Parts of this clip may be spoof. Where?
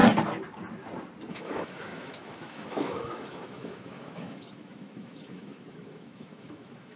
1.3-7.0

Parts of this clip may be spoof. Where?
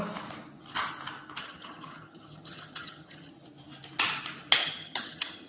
1.4-3.3; 4.6-5.5